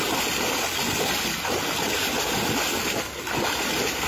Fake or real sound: real